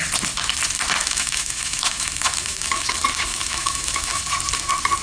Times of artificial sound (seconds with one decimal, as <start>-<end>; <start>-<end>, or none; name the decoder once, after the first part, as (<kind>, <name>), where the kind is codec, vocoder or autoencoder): 1.0-2.9 (autoencoder, DAC-VAE); 3.3-4.2